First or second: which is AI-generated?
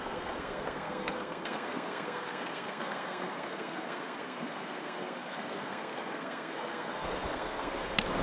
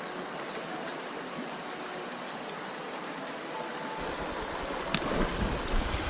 first